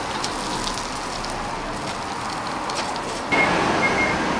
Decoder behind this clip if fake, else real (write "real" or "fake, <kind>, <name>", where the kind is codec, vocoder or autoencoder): real